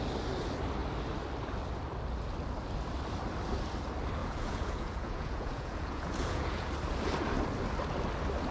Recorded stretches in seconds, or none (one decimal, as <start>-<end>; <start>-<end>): 0.0-4.2; 6.7-8.5